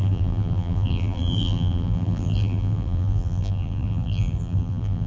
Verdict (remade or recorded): remade